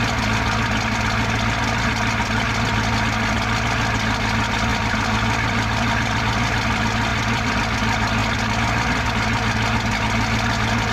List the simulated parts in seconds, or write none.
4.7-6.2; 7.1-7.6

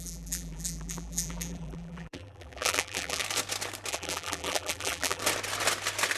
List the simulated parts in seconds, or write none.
0.0-3.2; 3.9-5.2

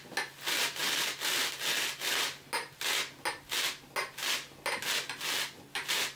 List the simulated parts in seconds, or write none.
none

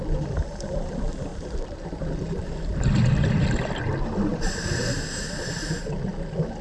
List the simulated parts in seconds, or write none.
1.3-2.1

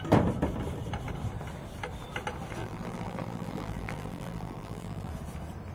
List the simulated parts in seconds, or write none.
2.6-5.1

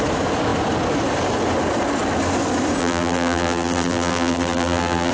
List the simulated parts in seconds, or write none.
2.8-5.1